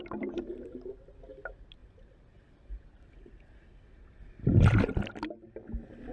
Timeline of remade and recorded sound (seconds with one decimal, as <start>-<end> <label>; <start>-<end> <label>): 0.0-6.1 recorded

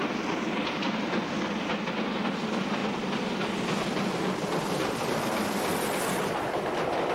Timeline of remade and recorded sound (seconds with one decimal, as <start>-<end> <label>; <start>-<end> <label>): 0.0-7.1 recorded

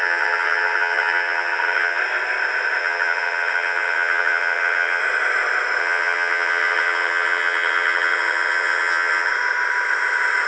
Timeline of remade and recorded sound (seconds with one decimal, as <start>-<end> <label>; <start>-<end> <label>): 0.0-2.0 remade; 2.0-2.8 recorded; 2.8-5.0 remade; 5.0-5.8 recorded; 5.8-9.3 remade; 9.3-10.5 recorded

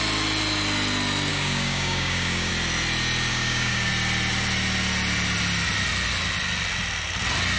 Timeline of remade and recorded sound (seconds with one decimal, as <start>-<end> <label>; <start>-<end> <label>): 0.0-1.3 recorded; 1.3-2.5 remade; 2.5-3.3 recorded; 3.3-3.9 remade; 3.9-7.6 recorded

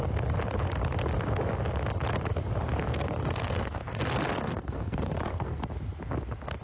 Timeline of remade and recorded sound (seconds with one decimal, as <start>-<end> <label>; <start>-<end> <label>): 0.0-2.8 recorded; 2.8-4.0 remade; 4.0-4.4 recorded; 4.4-5.6 remade; 5.6-6.6 recorded

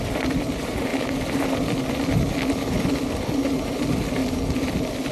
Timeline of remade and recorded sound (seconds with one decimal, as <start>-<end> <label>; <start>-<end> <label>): 0.0-5.1 recorded